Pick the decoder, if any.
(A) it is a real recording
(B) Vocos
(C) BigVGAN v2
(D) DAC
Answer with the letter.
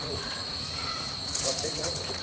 B